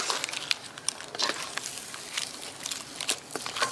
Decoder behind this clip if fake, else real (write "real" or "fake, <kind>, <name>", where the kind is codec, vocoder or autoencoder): real